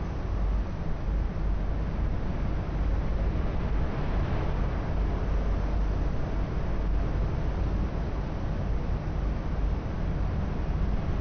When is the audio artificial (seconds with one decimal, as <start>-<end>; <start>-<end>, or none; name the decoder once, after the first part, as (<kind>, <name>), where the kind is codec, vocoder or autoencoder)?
none